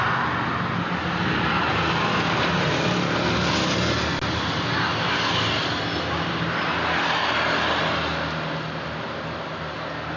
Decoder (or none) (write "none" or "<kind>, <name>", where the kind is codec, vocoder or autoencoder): none